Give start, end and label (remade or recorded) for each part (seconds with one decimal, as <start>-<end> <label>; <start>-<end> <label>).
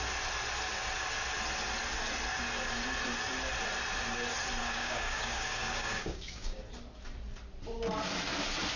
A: 0.0-4.6 recorded; 4.6-6.6 remade; 6.6-8.8 recorded